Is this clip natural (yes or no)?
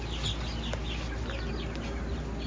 yes